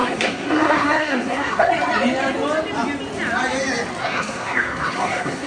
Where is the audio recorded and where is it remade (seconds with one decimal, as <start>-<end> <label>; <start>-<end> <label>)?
0.0-1.7 remade; 1.7-4.0 recorded; 4.0-5.5 remade